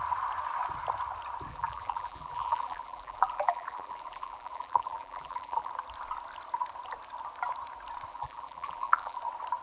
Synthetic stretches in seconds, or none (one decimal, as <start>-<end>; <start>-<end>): 1.5-5.7; 8.1-9.2